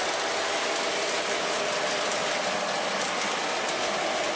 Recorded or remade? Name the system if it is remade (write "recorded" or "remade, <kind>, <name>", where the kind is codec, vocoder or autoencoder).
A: recorded